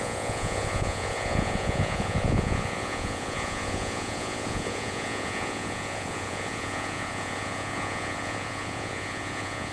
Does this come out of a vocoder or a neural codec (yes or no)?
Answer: yes